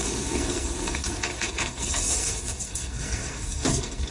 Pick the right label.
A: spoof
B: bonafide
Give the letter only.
A